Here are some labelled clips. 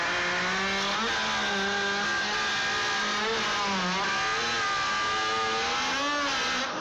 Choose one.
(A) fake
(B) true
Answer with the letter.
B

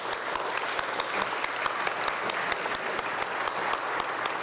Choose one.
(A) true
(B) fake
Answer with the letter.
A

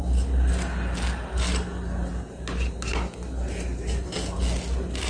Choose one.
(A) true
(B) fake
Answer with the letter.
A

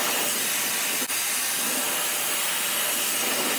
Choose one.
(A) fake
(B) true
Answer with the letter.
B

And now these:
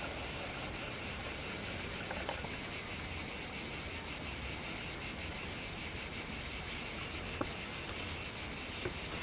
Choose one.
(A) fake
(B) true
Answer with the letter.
B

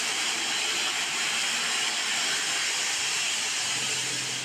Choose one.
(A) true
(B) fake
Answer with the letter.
A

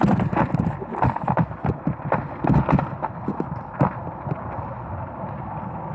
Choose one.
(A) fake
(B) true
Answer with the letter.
B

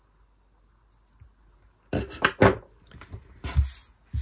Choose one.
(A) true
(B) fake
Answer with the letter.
A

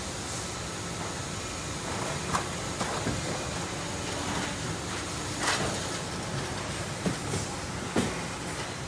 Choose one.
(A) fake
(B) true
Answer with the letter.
B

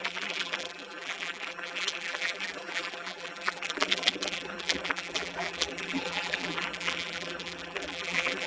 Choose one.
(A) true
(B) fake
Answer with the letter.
B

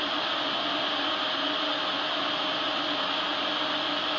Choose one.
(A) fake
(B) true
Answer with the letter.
B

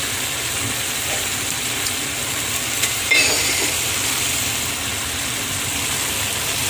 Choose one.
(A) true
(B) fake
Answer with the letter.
B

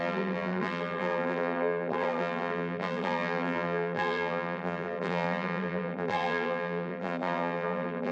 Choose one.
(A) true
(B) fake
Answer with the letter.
B